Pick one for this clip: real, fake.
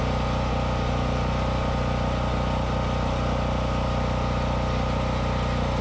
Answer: real